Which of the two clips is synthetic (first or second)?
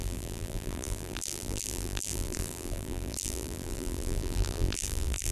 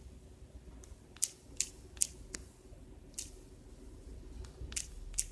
first